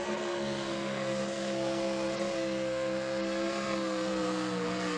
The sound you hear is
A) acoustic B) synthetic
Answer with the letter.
B